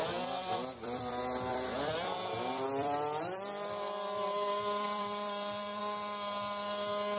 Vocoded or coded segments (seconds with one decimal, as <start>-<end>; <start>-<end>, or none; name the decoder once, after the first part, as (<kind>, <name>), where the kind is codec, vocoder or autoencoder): 0.0-1.1 (vocoder, BigVGAN v2); 1.5-5.8